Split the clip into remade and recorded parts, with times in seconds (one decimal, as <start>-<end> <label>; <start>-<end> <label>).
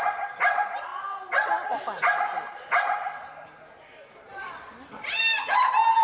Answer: 0.0-6.0 recorded